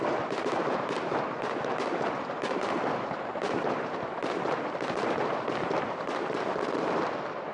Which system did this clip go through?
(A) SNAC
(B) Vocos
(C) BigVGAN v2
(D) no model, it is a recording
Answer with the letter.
C